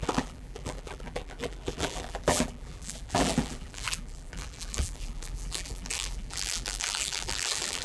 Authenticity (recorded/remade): remade